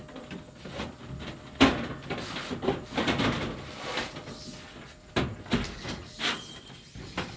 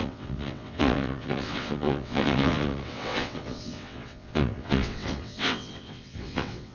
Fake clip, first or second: second